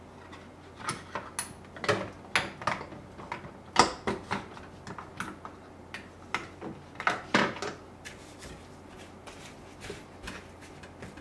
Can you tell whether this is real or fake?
real